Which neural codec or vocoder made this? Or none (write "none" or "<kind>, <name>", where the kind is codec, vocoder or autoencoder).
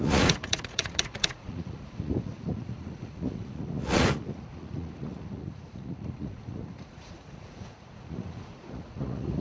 vocoder, Vocos